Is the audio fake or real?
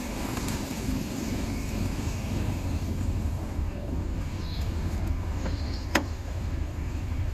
fake